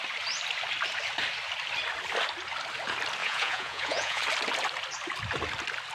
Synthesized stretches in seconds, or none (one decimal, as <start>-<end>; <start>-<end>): 3.2-4.2

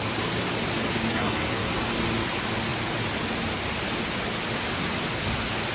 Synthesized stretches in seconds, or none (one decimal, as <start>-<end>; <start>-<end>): 1.1-1.7

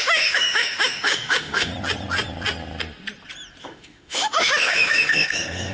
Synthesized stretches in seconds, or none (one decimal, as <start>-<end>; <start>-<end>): 0.0-1.7; 3.6-5.7

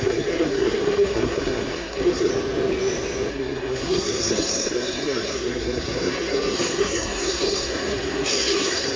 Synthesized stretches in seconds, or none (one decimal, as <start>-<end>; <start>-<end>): 0.0-2.3; 3.3-9.0